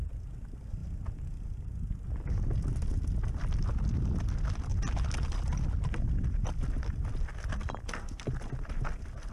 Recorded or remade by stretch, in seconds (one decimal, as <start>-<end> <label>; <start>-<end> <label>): 0.0-9.3 recorded